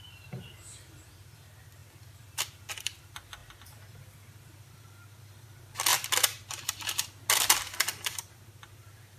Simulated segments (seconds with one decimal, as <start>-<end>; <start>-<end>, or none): 0.0-5.9; 7.3-9.2

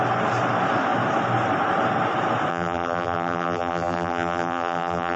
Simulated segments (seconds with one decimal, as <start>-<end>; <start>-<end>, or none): 2.5-5.2

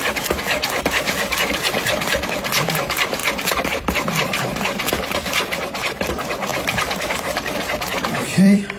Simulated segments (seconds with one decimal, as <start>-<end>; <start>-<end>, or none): 3.2-6.1; 6.5-8.8

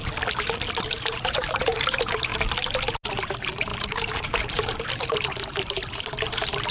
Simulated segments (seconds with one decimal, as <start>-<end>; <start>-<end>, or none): 0.8-2.3; 3.1-6.7